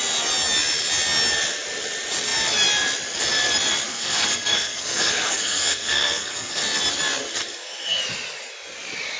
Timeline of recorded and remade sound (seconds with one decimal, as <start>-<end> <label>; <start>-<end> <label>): 0.0-3.9 recorded; 3.9-6.6 remade; 6.6-7.5 recorded; 7.5-8.0 remade; 8.0-9.2 recorded